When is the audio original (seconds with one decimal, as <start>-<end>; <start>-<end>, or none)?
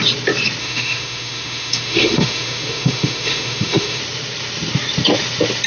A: 0.0-0.6; 4.0-5.7